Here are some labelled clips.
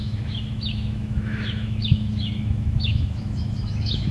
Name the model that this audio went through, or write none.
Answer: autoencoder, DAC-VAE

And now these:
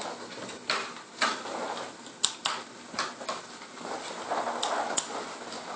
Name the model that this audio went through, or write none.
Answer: none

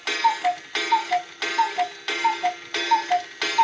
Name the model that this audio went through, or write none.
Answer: none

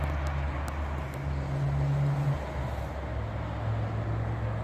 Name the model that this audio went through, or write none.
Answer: none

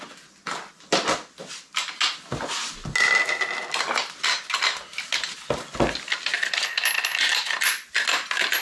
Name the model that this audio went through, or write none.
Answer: none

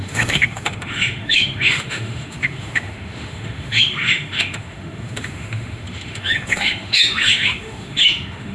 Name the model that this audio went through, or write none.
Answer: autoencoder, DAC-VAE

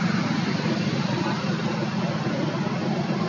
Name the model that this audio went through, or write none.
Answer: none